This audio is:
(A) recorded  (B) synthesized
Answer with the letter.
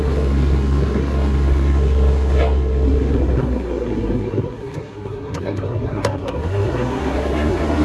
B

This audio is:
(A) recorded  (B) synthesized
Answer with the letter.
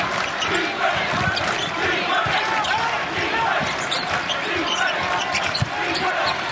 A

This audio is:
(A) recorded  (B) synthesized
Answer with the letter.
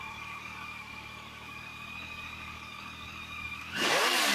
B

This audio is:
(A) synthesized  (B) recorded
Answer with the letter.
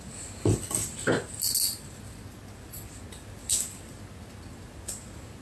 B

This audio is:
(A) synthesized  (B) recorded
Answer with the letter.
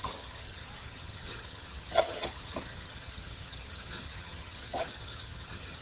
A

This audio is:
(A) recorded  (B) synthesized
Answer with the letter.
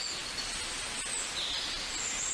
A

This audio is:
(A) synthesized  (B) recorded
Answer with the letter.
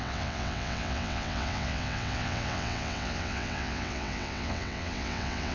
A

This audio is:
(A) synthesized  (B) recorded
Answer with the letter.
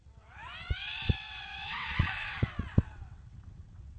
A